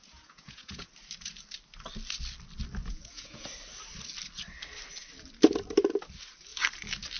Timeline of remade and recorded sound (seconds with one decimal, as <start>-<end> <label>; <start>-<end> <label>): 0.0-0.9 remade; 0.9-2.8 recorded; 2.8-3.5 remade; 3.5-7.2 recorded

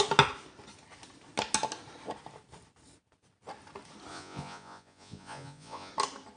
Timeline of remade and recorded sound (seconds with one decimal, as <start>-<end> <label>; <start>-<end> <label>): 0.0-4.1 recorded; 4.1-5.9 remade; 5.9-6.4 recorded